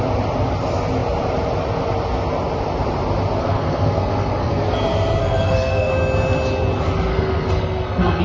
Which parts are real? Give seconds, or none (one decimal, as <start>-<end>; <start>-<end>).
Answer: 0.0-3.4; 4.6-5.2; 5.9-7.1